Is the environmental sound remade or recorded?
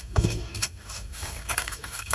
remade